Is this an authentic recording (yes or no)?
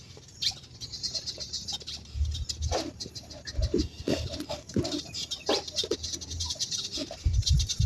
no